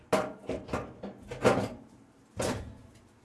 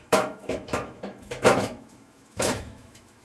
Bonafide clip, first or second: first